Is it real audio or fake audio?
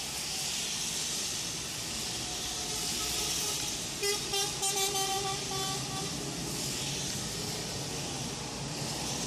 real